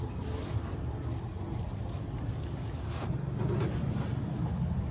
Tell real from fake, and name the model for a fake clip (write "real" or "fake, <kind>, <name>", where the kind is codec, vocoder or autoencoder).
real